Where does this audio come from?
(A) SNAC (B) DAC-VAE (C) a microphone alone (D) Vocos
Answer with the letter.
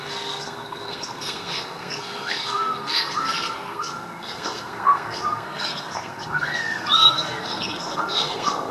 A